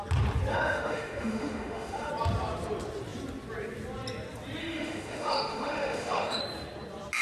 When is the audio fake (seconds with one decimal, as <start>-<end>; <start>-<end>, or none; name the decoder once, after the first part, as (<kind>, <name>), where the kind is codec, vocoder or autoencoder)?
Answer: 0.5-2.1 (autoencoder, DAC-VAE); 4.6-6.4

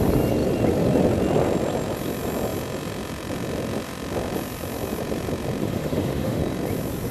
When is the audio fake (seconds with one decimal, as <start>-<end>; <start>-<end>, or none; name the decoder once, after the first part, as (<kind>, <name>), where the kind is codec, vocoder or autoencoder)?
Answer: 5.6-6.4 (autoencoder, DAC-VAE)

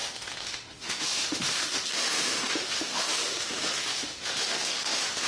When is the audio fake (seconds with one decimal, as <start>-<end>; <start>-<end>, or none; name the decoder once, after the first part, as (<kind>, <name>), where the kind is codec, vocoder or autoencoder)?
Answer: 0.0-5.3 (autoencoder, DAC-VAE)

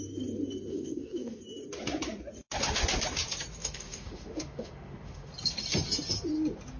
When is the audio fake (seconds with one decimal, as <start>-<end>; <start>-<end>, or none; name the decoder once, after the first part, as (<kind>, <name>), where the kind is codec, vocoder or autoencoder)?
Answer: 0.7-1.4 (autoencoder, DAC-VAE); 3.6-5.3

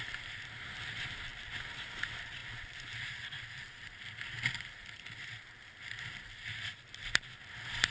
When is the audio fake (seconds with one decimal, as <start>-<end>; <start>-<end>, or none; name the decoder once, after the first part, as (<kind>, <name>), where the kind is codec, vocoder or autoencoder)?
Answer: none

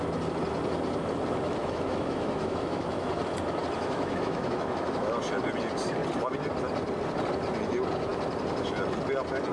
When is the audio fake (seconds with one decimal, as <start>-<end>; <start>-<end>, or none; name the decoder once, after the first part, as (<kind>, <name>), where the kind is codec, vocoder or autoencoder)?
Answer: 1.6-3.2 (autoencoder, DAC-VAE); 3.8-5.2

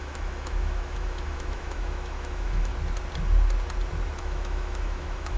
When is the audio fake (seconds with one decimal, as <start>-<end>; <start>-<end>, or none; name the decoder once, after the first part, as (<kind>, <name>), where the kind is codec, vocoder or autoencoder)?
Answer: 0.0-2.7 (autoencoder, DAC-VAE); 4.2-5.4

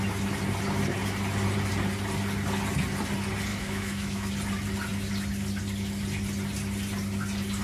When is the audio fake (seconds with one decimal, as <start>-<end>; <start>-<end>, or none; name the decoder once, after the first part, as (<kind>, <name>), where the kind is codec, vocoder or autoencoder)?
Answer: 3.5-4.3 (autoencoder, DAC-VAE)